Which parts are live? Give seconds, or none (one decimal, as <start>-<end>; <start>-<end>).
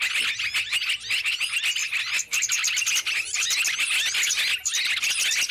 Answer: 0.0-5.5